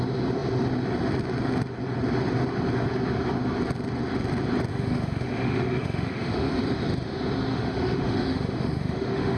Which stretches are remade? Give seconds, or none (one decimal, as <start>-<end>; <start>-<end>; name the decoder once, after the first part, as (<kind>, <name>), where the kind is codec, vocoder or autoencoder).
4.7-6.5 (autoencoder, DAC-VAE); 7.5-9.4